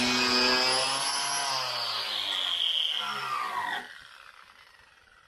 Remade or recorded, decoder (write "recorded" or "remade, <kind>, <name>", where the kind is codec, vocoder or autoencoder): recorded